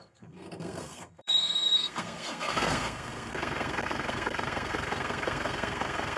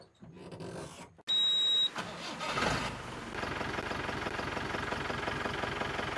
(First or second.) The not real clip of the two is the first